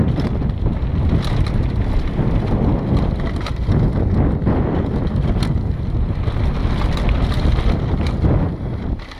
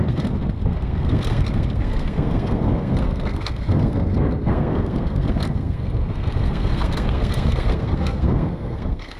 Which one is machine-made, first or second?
second